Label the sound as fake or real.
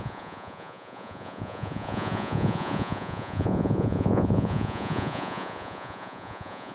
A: fake